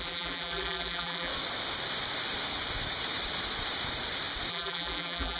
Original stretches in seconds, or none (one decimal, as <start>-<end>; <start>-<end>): 1.3-4.5